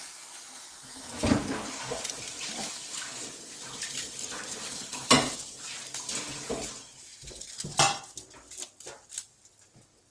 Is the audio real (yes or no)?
yes